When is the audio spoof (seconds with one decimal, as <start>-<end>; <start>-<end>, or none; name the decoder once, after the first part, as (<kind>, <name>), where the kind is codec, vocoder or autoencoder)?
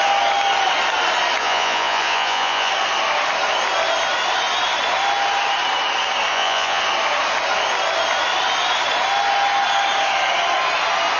1.4-2.7 (vocoder, Vocos); 6.3-6.8